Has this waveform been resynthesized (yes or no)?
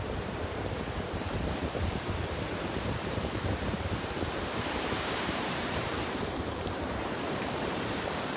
yes